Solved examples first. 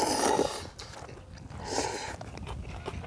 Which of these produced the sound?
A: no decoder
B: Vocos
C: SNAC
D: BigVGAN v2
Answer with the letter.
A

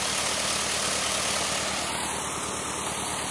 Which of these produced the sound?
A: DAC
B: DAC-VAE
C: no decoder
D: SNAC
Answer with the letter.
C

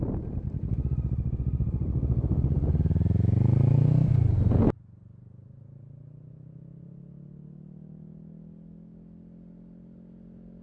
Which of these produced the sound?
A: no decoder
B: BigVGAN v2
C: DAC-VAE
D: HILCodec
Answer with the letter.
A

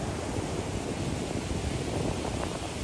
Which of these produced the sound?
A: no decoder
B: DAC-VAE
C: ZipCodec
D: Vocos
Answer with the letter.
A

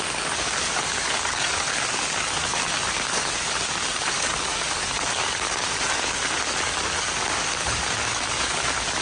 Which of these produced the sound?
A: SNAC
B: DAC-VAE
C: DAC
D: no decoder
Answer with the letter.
C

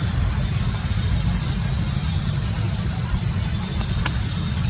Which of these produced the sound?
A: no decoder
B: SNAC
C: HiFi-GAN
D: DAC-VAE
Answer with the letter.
A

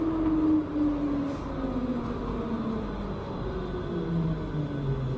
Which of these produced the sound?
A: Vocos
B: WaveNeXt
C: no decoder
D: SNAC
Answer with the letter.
C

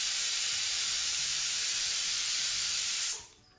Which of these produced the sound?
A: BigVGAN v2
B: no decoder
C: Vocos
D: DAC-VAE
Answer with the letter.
A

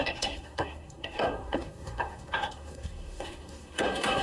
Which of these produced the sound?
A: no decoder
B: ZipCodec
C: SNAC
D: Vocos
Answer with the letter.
C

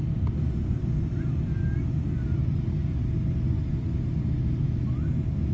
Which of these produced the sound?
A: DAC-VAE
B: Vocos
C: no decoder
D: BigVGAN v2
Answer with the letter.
C